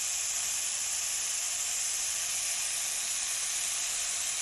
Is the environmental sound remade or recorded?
recorded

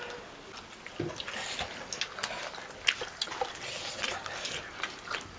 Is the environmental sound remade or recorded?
recorded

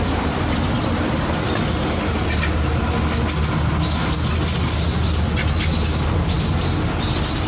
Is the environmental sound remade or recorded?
recorded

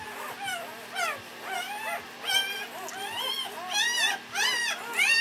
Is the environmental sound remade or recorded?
recorded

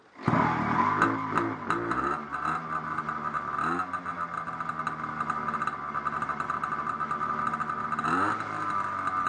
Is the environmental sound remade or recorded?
recorded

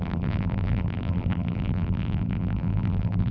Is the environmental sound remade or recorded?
remade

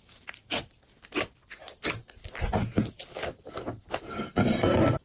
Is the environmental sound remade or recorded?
recorded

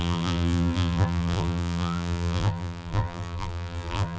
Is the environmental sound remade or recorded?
remade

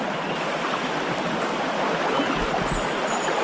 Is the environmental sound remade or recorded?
recorded